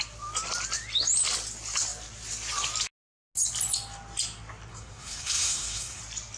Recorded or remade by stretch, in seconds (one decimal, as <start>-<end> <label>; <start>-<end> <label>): 0.0-4.7 recorded; 4.7-6.0 remade; 6.0-6.4 recorded